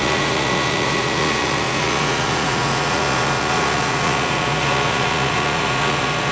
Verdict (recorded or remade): remade